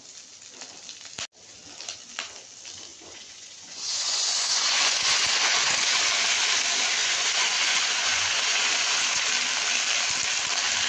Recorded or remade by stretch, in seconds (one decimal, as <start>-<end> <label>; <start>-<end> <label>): 0.0-2.9 recorded; 2.9-6.0 remade; 6.0-7.0 recorded; 7.0-9.3 remade; 9.3-10.9 recorded